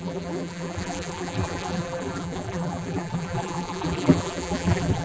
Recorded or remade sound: remade